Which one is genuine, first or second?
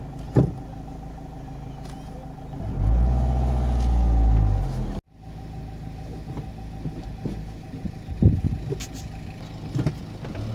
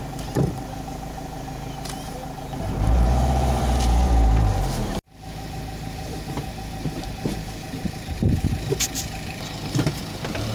first